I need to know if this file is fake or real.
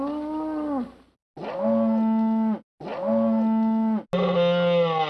real